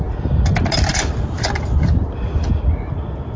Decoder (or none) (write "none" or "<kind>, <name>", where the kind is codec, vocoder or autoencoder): none